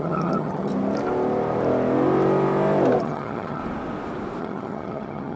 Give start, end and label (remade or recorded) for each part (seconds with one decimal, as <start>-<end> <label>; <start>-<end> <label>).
0.0-0.7 remade; 0.7-3.0 recorded; 3.0-3.6 remade; 3.6-4.4 recorded; 4.4-5.4 remade